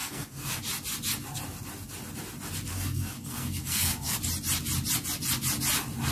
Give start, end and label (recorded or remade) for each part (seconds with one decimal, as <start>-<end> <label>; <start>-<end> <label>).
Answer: 0.0-0.6 remade; 0.6-2.7 recorded; 2.7-4.2 remade; 4.2-6.1 recorded